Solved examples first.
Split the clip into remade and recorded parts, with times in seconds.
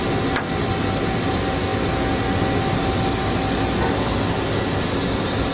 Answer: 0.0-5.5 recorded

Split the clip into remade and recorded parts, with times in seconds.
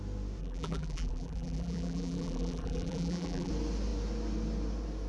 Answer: 0.0-0.4 recorded; 0.4-3.5 remade; 3.5-5.1 recorded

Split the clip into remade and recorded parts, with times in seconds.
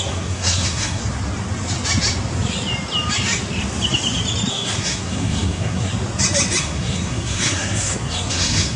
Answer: 0.0-1.0 remade; 1.0-4.5 recorded; 4.5-5.9 remade; 5.9-6.6 recorded; 6.6-8.8 remade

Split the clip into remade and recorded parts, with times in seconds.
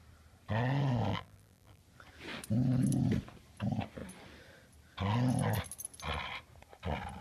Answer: 0.0-1.1 recorded; 1.1-1.8 remade; 1.8-7.2 recorded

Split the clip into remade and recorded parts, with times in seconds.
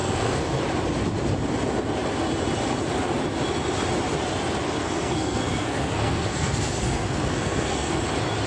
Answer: 0.0-0.6 remade; 0.6-4.8 recorded; 4.8-8.0 remade; 8.0-8.5 recorded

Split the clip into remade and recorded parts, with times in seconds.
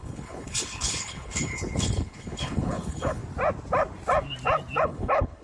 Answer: 0.0-3.2 remade; 3.2-4.8 recorded; 4.8-5.4 remade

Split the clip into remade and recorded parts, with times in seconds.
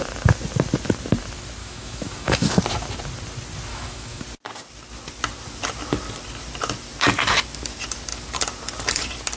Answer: 0.0-1.6 recorded; 1.6-2.6 remade; 2.6-3.7 recorded; 3.7-4.2 remade; 4.2-9.4 recorded